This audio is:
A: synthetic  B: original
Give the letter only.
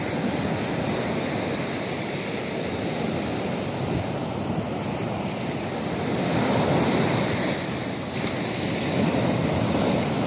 B